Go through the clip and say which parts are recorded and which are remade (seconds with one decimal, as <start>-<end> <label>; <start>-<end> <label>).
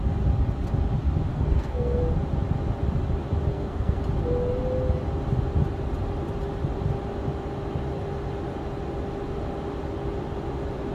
0.0-1.3 recorded; 1.3-2.0 remade; 2.0-3.5 recorded; 3.5-4.0 remade; 4.0-10.9 recorded